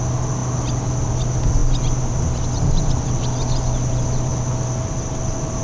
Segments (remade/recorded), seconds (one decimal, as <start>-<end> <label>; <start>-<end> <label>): 0.0-5.6 recorded